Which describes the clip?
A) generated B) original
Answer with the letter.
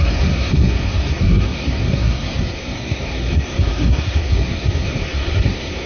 A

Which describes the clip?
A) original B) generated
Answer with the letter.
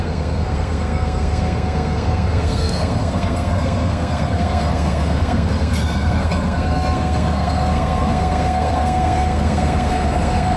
B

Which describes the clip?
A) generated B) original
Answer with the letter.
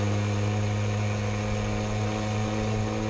B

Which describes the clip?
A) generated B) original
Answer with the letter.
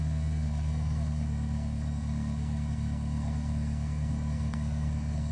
A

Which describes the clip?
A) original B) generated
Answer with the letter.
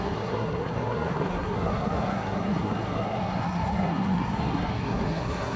B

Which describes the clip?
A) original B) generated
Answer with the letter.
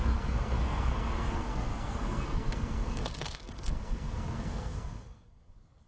B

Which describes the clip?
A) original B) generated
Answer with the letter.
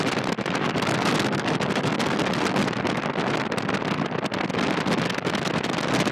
A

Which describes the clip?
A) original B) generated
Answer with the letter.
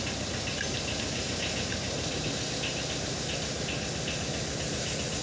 A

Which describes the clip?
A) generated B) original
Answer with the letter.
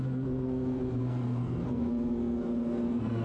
A